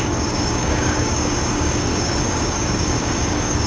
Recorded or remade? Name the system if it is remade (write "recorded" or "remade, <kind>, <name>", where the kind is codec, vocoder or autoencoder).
remade, codec, DAC